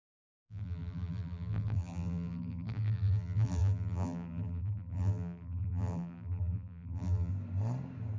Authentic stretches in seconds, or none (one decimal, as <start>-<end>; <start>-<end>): 7.3-8.2